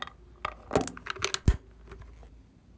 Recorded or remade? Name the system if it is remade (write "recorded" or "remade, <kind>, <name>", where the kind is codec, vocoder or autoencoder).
recorded